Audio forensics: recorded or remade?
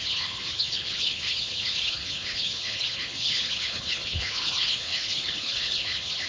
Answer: remade